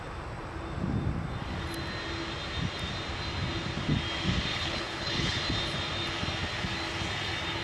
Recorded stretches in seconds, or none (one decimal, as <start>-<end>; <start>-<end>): 0.0-4.5; 5.4-7.6